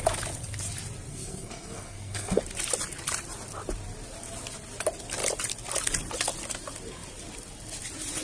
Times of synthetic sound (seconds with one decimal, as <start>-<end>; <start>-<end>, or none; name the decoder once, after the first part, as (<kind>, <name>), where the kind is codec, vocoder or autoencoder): 1.1-2.4 (codec, SNAC)